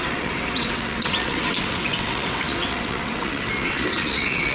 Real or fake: fake